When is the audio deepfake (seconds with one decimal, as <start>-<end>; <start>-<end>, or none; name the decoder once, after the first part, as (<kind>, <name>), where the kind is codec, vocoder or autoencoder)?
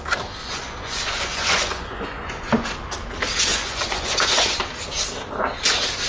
0.4-2.5 (vocoder, Vocos); 3.5-4.6